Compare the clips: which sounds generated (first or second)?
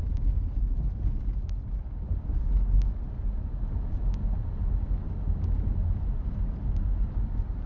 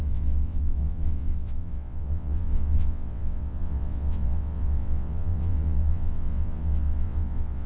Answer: second